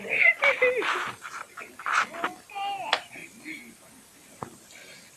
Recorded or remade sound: recorded